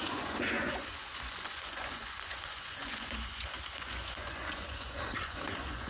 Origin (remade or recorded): remade